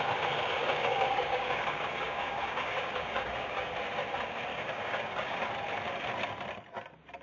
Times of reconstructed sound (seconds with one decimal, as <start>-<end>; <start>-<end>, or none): 0.6-3.7; 4.5-5.4